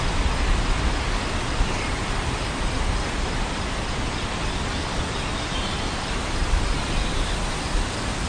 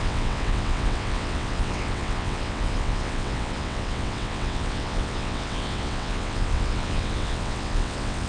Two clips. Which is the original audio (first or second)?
first